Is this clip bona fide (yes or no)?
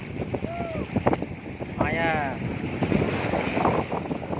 yes